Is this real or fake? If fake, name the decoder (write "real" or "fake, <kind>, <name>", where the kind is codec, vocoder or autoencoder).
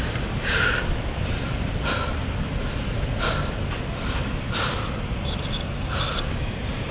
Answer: real